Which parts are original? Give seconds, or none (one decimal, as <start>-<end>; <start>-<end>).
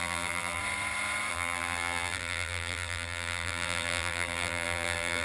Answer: 0.6-1.3